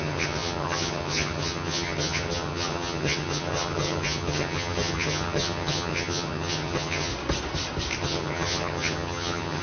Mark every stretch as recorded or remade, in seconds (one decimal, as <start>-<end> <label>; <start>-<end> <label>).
0.0-7.1 remade; 7.1-8.0 recorded; 8.0-9.6 remade